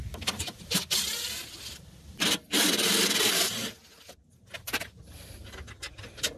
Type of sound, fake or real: real